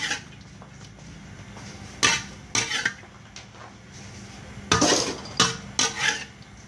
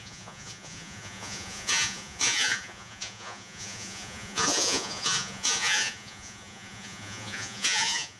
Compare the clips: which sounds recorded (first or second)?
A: first